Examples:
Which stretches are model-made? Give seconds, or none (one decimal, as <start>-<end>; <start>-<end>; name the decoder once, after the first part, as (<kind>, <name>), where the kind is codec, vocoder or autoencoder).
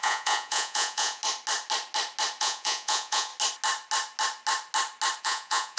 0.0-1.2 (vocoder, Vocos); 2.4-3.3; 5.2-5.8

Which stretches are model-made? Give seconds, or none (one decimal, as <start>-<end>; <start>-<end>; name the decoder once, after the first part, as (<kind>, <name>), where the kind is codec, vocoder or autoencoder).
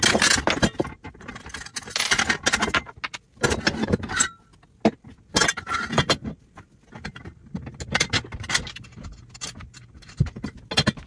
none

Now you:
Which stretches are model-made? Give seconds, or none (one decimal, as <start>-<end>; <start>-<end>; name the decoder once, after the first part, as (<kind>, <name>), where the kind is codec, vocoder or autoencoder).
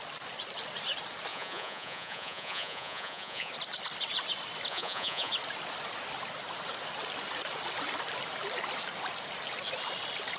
1.3-3.5 (vocoder, Vocos); 4.7-5.3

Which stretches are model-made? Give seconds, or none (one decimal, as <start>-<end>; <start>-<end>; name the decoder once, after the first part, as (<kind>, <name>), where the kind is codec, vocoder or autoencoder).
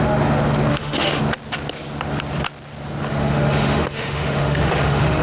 0.7-1.2 (autoencoder, DAC-VAE); 3.1-5.2